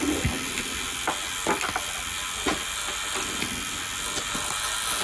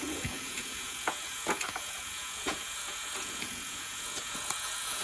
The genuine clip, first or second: first